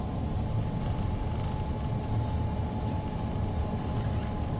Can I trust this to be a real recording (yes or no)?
yes